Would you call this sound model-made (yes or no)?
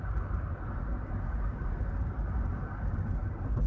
no